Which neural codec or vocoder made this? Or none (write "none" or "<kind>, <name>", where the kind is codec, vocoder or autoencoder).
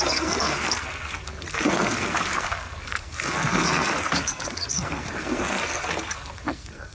codec, SNAC